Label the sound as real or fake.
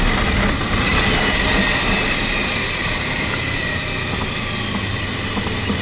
real